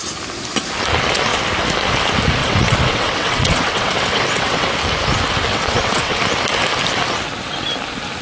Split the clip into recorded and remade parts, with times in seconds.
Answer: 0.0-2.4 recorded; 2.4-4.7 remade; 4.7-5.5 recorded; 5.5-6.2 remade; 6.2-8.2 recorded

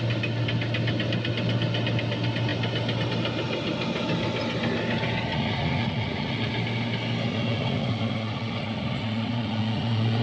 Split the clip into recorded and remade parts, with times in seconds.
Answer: 0.0-5.3 recorded; 5.3-6.5 remade; 6.5-7.3 recorded; 7.3-10.2 remade